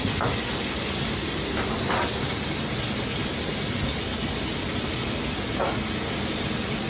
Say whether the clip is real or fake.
real